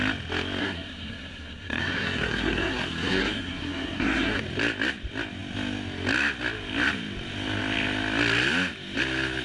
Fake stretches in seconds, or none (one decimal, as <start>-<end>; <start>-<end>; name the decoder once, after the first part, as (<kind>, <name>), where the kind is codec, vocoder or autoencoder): 0.6-4.4 (codec, SNAC)